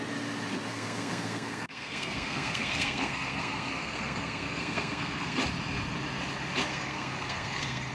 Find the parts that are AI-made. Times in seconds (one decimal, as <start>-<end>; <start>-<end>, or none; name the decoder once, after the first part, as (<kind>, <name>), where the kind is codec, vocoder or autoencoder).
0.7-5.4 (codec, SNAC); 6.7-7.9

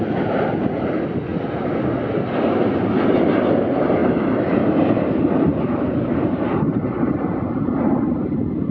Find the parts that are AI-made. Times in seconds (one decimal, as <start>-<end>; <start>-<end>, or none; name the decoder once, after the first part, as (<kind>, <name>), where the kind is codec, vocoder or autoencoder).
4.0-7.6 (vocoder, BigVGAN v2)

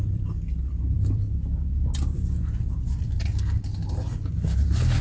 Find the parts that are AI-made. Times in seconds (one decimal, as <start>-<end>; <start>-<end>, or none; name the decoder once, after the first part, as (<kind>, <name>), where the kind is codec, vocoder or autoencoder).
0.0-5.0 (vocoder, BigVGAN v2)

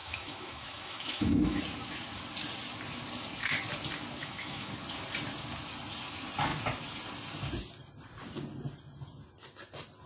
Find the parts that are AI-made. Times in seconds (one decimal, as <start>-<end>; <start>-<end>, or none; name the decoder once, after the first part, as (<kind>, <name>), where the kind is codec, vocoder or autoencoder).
0.0-1.6 (autoencoder, DAC-VAE); 4.2-4.7

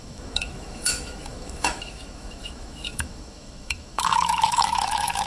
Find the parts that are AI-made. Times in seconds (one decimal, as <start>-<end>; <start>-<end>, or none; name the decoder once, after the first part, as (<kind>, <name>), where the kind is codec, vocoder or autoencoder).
0.0-5.3 (autoencoder, DAC-VAE)